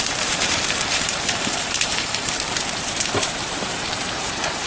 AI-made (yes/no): yes